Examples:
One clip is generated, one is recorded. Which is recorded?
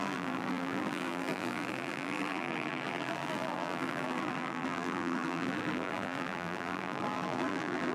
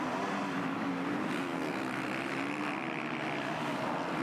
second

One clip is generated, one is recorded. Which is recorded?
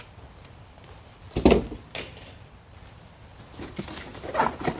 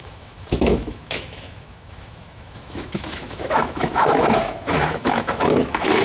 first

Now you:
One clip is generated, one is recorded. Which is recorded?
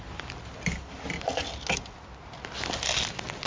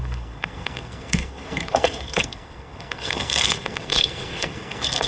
first